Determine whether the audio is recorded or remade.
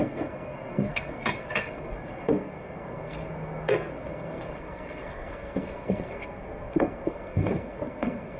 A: remade